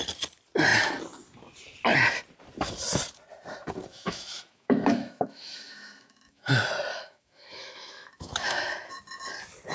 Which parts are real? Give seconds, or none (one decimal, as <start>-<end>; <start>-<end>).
0.0-3.9; 6.5-6.9; 8.9-9.7